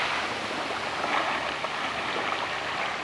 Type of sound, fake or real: real